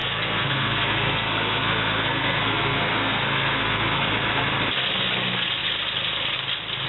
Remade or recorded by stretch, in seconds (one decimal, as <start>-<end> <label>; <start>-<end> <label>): 0.0-4.1 remade; 4.1-6.9 recorded